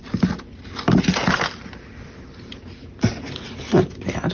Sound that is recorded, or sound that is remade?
recorded